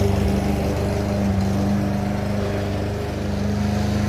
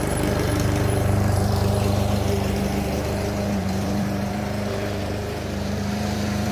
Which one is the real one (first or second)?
first